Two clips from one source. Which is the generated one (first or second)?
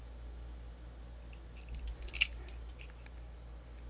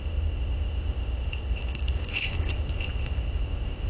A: second